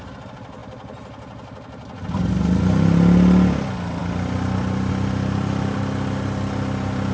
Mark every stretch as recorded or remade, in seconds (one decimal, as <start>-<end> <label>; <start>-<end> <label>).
0.0-7.1 recorded